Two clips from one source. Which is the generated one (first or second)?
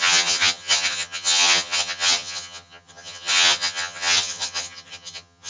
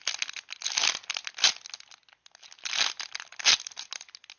first